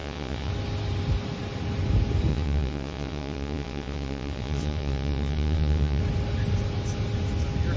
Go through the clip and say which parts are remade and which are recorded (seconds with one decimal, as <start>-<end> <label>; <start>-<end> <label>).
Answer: 0.0-0.5 remade; 0.5-2.3 recorded; 2.3-6.0 remade; 6.0-7.8 recorded